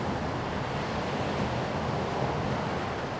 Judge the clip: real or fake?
real